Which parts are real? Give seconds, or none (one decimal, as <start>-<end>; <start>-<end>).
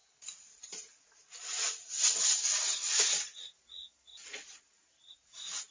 3.4-4.1; 4.6-5.7